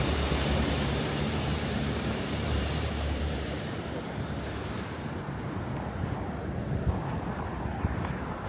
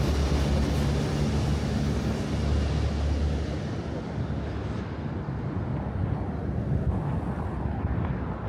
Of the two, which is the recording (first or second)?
second